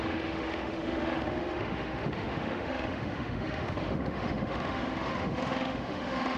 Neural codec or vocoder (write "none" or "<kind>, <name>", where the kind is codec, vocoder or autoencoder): autoencoder, DAC-VAE